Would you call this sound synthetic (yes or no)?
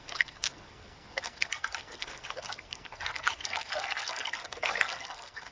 yes